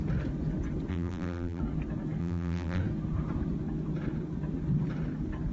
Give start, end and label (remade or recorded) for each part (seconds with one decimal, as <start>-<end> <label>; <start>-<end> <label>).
0.0-0.9 recorded; 0.9-1.6 remade; 1.6-2.2 recorded; 2.2-2.8 remade; 2.8-5.5 recorded